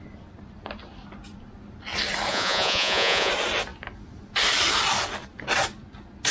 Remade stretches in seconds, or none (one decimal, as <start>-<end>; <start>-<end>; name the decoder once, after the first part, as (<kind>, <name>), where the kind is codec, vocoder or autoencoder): 2.3-3.3 (vocoder, Vocos)